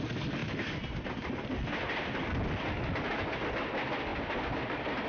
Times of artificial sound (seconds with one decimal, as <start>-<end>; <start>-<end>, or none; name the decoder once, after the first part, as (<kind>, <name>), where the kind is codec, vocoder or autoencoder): none

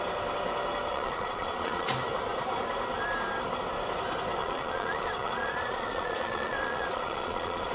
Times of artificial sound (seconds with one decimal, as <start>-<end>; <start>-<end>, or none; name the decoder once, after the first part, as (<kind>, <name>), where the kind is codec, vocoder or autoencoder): 0.9-1.9 (vocoder, Vocos); 4.4-7.7

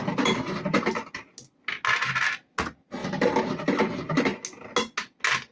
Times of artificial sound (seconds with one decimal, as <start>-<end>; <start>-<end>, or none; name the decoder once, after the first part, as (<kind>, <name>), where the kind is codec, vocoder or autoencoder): none

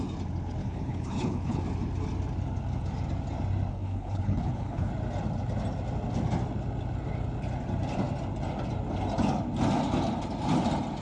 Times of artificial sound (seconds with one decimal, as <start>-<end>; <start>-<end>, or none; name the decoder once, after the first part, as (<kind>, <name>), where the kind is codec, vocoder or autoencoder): 0.6-1.6 (codec, HILCodec); 3.7-4.9

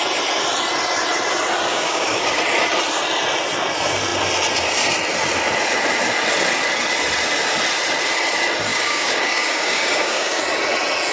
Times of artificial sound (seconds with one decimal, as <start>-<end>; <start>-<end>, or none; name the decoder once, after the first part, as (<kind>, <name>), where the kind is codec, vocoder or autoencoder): 1.7-2.4 (codec, DAC); 8.7-10.4